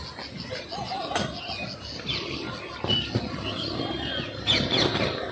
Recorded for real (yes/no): yes